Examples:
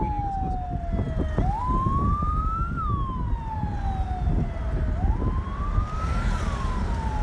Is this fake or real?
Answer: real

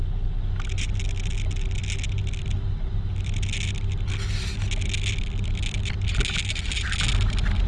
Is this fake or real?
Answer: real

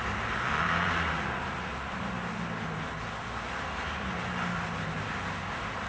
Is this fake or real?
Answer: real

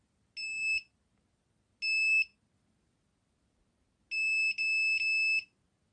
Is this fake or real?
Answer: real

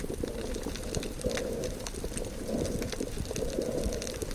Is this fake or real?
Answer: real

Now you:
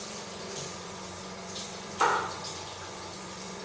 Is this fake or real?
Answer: fake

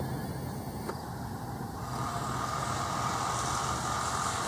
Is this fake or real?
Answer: real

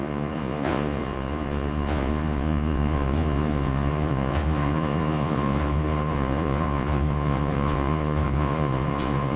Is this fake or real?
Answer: fake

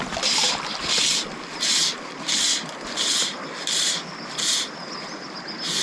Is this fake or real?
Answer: real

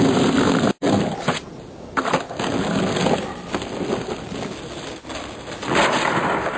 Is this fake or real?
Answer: real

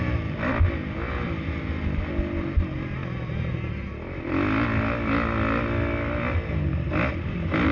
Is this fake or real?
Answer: real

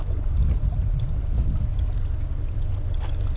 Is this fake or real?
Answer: real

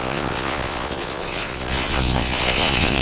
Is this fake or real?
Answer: fake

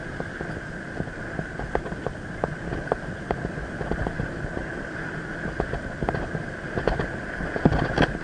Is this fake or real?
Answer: real